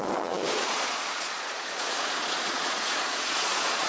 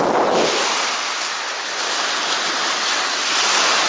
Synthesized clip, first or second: first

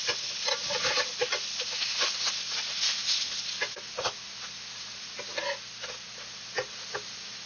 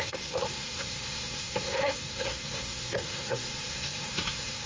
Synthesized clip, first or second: second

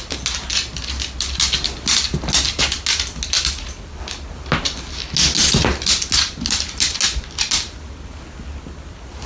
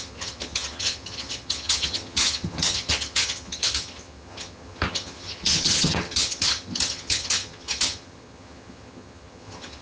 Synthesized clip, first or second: second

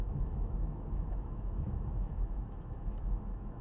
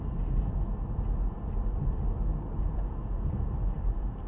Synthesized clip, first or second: first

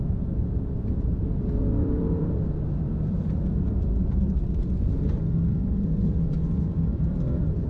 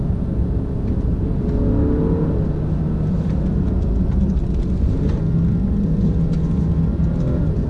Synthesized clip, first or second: first